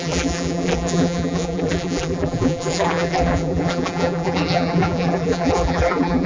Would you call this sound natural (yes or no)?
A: no